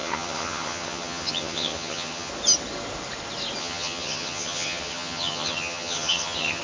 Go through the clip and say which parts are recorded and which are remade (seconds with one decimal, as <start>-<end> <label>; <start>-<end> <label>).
0.0-2.3 remade; 2.3-3.6 recorded; 3.6-6.6 remade